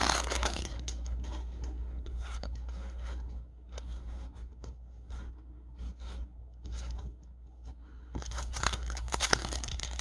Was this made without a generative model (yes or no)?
no